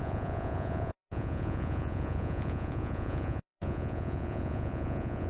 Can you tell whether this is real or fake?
fake